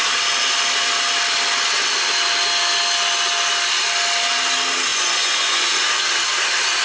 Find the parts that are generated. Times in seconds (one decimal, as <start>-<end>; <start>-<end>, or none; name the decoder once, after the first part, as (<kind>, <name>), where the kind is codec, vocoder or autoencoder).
4.9-5.9 (vocoder, Vocos)